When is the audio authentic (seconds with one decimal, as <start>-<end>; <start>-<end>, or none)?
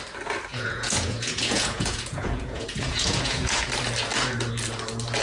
0.0-0.5; 3.6-5.2